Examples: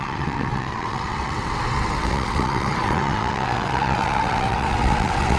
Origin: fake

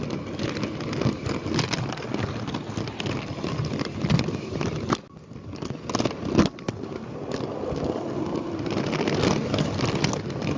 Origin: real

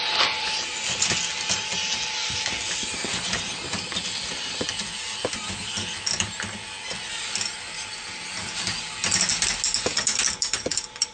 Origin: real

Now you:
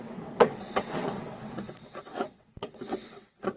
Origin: fake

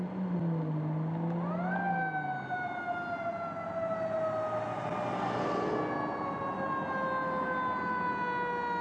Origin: real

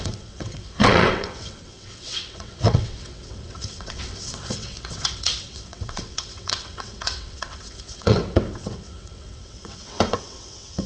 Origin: fake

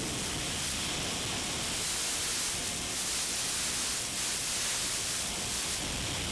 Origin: real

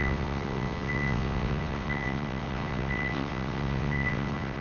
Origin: fake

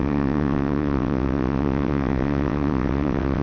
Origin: fake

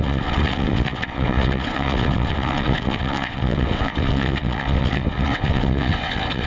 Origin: fake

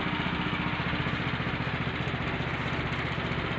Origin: real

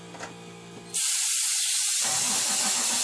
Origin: real